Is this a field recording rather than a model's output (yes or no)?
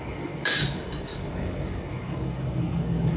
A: no